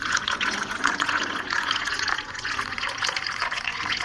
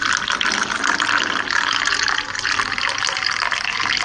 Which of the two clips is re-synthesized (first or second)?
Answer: first